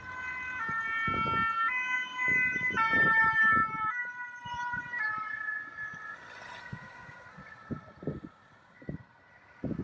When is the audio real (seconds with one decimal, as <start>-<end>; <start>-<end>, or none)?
0.0-3.6; 4.8-5.9